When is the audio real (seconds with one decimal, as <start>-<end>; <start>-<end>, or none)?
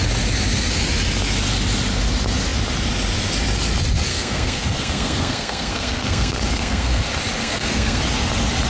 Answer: 0.0-4.1; 7.0-7.4; 8.0-8.7